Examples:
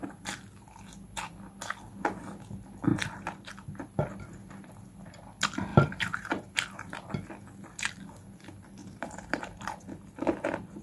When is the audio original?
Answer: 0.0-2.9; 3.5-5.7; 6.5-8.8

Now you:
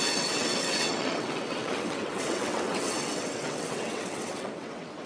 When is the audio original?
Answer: none

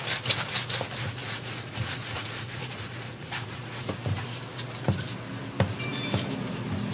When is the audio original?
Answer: 0.0-1.2; 3.9-6.9

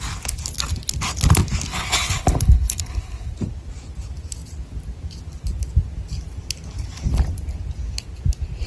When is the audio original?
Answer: 0.0-1.7; 3.3-8.7

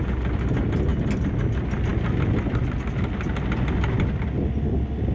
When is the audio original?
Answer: 0.0-5.1